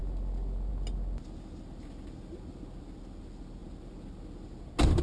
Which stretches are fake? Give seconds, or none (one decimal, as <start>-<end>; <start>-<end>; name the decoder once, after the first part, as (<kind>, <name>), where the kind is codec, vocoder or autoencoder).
none